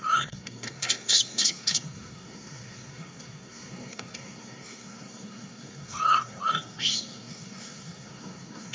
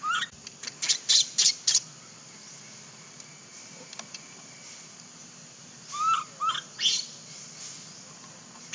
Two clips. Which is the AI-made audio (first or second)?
first